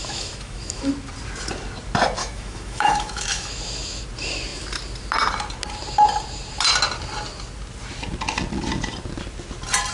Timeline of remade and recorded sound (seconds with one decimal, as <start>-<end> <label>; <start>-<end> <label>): 0.0-0.9 remade; 0.9-2.2 recorded; 2.2-4.0 remade; 4.0-9.9 recorded